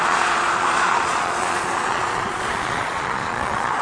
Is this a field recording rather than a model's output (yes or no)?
no